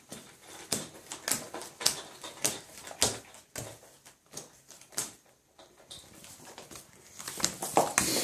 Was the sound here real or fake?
real